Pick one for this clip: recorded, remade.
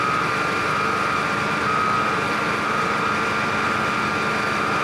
recorded